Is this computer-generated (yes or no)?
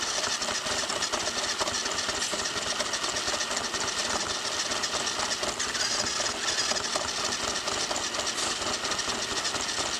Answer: no